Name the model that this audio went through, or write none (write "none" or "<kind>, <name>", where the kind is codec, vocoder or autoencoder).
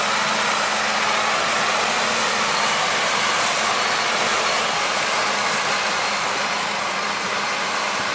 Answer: none